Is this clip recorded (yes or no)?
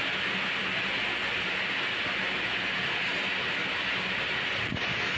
yes